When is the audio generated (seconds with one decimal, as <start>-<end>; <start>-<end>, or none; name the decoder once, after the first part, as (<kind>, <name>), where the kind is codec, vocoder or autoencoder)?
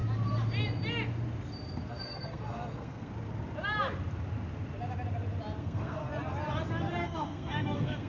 1.9-3.1 (codec, SNAC); 5.6-6.0; 6.9-8.1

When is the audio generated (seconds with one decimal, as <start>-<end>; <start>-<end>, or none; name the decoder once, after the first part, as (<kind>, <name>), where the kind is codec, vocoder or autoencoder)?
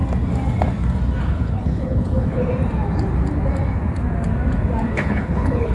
1.2-2.5 (codec, HILCodec); 4.9-5.7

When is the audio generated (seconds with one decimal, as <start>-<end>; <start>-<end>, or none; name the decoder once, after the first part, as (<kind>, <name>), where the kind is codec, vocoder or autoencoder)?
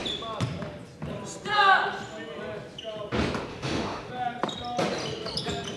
3.5-4.1 (autoencoder, DAC-VAE)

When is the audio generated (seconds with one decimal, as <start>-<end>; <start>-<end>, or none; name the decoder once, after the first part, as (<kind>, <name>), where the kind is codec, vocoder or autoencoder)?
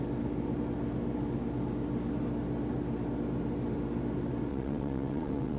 4.5-5.6 (vocoder, WaveNeXt)